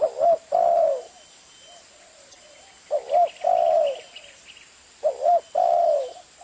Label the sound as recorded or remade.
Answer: recorded